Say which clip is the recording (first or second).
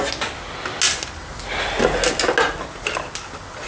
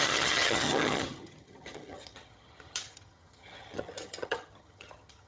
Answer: first